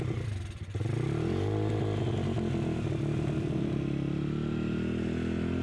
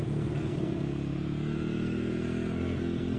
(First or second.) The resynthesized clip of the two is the second